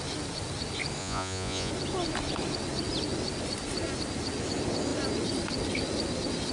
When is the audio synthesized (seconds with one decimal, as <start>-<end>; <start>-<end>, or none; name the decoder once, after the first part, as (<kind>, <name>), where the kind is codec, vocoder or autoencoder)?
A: 1.0-1.7 (vocoder, Vocos)